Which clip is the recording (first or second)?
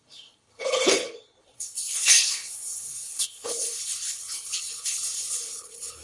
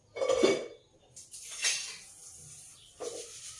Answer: second